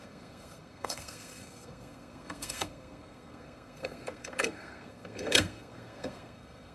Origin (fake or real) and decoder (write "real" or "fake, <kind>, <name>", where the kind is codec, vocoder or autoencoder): fake, codec, SNAC